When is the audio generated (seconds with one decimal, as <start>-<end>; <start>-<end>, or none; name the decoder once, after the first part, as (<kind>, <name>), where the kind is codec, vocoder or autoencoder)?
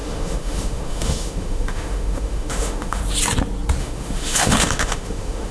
0.0-3.0 (autoencoder, DAC-VAE); 3.8-5.5